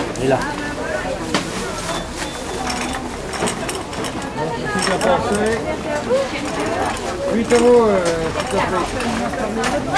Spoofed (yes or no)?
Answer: no